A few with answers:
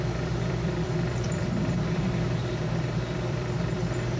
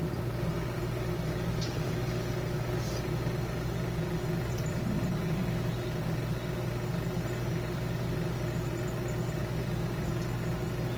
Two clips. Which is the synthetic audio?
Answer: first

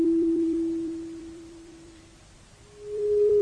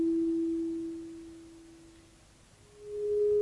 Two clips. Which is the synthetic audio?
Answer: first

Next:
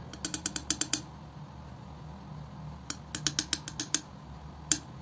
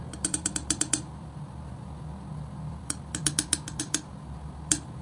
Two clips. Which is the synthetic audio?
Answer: second